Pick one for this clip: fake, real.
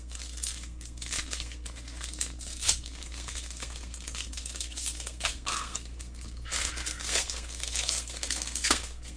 fake